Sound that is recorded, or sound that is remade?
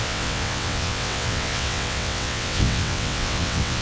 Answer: remade